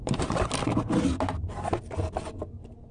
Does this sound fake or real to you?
real